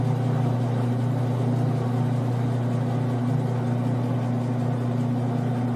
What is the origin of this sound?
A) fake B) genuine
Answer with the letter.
B